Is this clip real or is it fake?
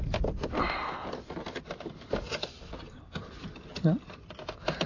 real